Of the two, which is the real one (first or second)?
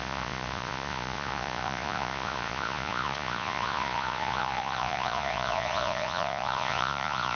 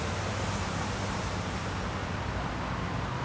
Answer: second